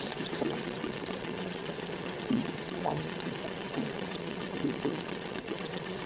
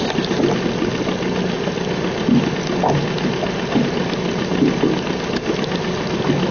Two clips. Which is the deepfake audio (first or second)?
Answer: first